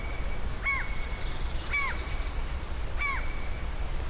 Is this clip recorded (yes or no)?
yes